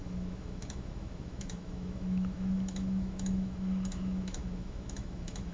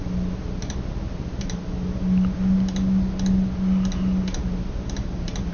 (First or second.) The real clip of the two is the second